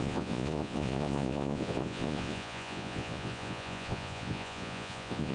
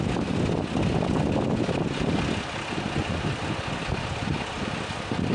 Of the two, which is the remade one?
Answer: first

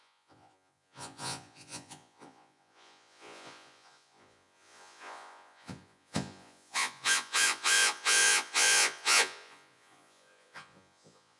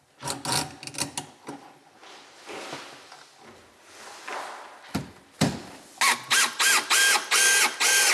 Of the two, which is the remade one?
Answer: first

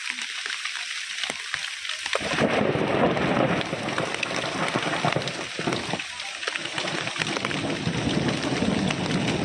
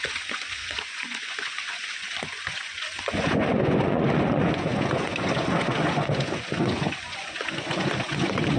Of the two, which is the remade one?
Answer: second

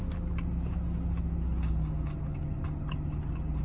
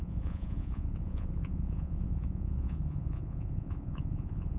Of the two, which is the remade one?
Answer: second